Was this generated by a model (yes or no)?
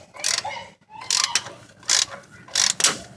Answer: no